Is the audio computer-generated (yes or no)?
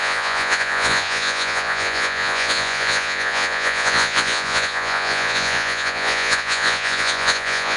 yes